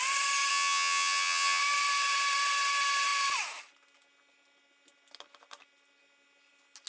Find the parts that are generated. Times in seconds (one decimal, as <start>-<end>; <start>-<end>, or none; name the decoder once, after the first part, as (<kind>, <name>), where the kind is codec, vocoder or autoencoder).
0.5-1.6 (vocoder, HiFi-GAN)